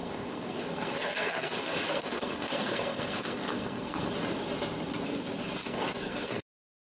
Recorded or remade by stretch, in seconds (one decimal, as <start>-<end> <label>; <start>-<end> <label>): 0.0-4.1 remade; 4.1-5.6 recorded; 5.6-6.4 remade; 6.4-6.9 recorded

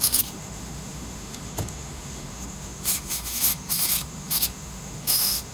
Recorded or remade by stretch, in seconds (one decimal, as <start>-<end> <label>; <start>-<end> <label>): 0.0-5.5 remade